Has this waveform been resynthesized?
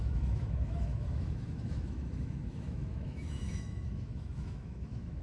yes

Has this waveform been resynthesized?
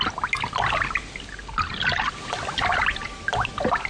no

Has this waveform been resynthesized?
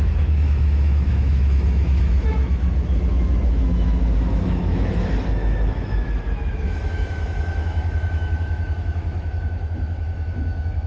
yes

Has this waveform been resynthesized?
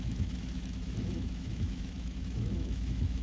yes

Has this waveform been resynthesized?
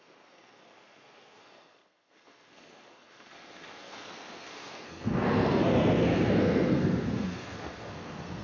yes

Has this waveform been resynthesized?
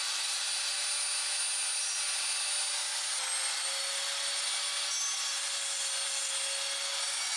no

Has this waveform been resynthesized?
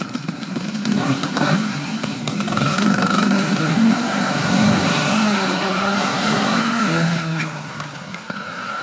yes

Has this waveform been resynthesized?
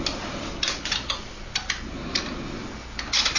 no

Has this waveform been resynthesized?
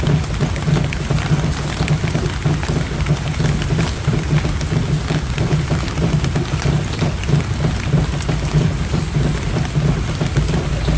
no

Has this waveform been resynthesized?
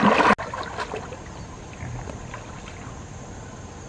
no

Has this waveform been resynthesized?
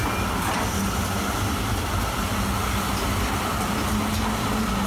no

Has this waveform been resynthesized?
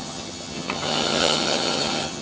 yes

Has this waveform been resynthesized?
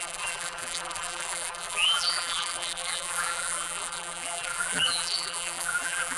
yes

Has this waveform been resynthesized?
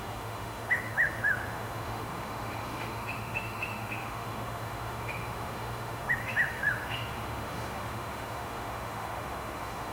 yes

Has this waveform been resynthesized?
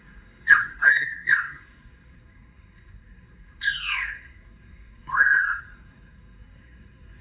yes